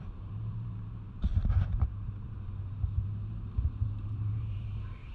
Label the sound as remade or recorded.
remade